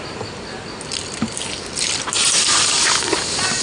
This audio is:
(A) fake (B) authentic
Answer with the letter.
B